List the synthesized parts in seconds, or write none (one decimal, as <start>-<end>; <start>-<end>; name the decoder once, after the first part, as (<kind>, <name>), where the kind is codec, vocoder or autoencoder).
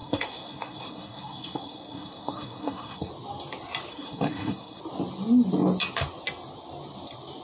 0.0-3.1 (codec, SNAC); 3.9-4.8